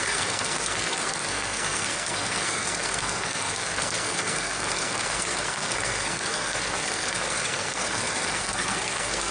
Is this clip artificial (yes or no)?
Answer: yes